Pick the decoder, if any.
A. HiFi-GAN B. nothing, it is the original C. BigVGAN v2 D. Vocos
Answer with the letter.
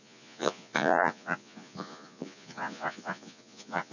D